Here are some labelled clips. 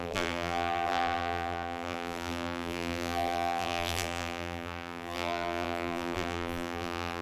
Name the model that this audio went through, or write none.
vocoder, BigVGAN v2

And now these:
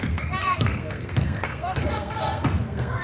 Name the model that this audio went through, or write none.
codec, SNAC